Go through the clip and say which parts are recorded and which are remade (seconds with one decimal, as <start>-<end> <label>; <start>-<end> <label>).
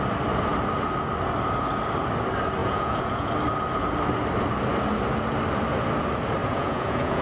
0.0-2.6 recorded; 2.6-3.3 remade; 3.3-6.4 recorded; 6.4-7.2 remade